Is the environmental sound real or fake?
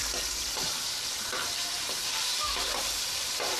fake